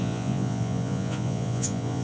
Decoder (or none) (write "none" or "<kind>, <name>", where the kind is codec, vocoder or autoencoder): vocoder, Vocos